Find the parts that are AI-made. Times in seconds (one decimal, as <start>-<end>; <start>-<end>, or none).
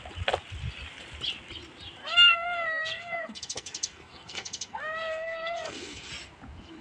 2.0-6.1